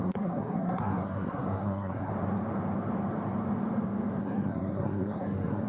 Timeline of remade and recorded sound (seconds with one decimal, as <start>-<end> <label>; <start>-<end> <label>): 0.0-2.1 remade; 2.1-4.2 recorded; 4.2-5.7 remade